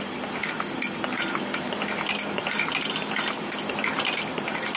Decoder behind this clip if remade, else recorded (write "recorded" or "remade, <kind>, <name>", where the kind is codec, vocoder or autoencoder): recorded